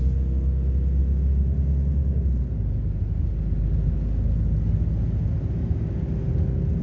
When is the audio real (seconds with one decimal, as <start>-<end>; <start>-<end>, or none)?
0.0-6.8